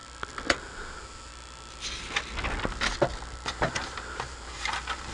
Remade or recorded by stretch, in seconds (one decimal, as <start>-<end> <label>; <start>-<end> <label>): 0.0-0.6 recorded; 0.6-1.3 remade; 1.3-3.5 recorded; 3.5-5.1 remade